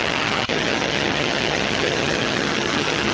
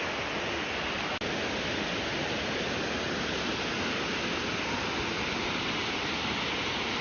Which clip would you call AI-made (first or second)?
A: first